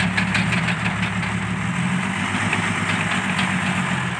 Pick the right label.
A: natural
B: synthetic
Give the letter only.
A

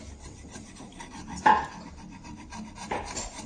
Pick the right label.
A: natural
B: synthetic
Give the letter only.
A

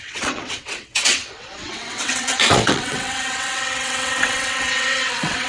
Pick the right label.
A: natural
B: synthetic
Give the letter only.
B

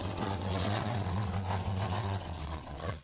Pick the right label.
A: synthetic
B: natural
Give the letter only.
A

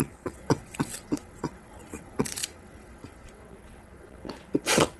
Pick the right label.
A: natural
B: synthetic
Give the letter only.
B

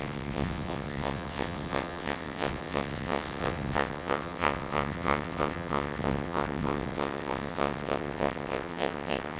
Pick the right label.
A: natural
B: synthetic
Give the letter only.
B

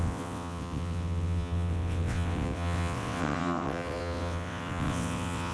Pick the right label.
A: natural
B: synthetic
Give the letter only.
B